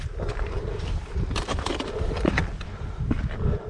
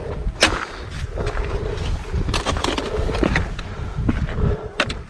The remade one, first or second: first